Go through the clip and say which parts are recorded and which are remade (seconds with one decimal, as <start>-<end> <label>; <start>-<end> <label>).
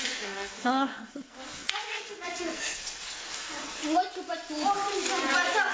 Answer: 0.0-3.8 remade; 3.8-5.7 recorded